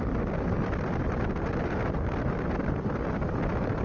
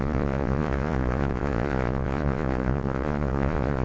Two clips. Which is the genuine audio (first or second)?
first